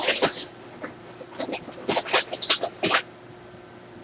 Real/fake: real